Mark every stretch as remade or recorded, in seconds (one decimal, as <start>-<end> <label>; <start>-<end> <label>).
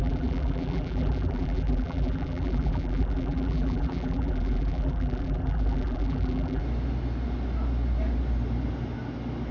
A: 0.0-6.6 remade; 6.6-9.5 recorded